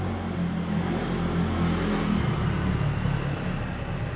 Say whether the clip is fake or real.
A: real